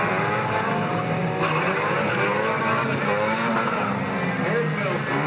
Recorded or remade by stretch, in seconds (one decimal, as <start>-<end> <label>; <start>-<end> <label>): 0.0-5.3 recorded